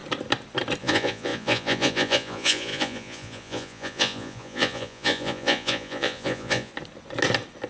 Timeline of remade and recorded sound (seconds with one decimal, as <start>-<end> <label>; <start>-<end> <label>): 0.0-0.8 recorded; 0.8-6.7 remade; 6.7-7.7 recorded